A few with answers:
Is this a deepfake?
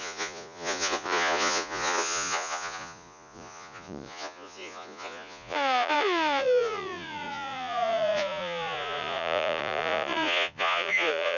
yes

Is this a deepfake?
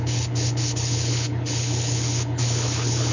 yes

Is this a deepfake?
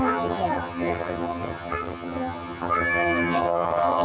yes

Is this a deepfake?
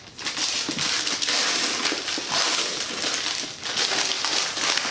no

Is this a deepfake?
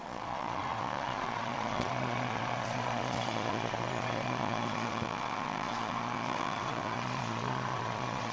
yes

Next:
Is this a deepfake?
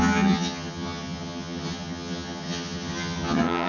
yes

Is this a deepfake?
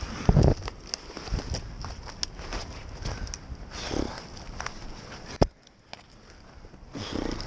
no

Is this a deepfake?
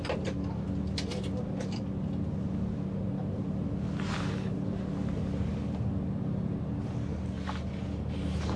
no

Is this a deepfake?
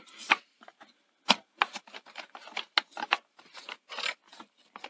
no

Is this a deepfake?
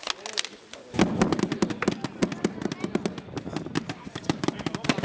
no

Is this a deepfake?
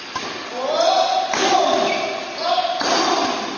no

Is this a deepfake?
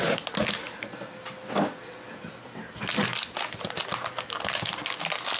no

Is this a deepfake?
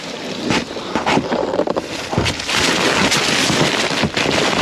no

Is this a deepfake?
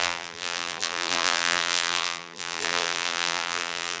yes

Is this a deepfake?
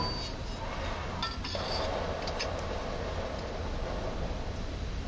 no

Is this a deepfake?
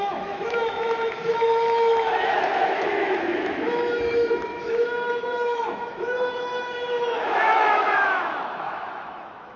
yes